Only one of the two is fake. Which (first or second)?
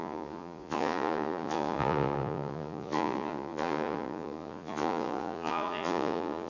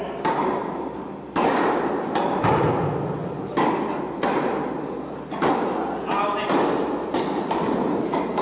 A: first